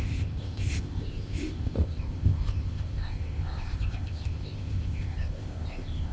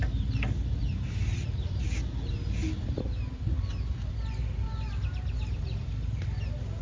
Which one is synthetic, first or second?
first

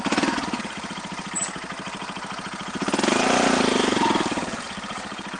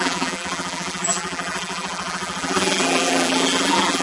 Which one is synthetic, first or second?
second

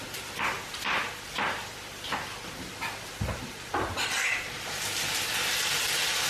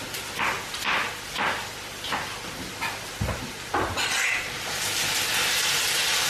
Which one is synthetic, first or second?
first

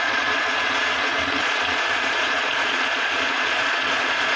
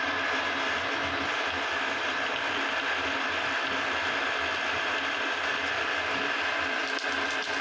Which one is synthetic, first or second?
first